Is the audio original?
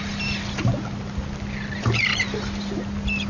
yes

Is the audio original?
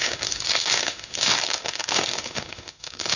no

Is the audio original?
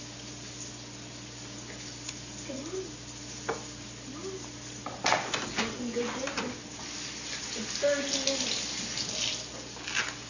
yes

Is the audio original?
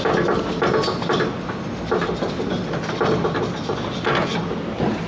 yes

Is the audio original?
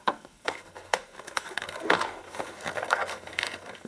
no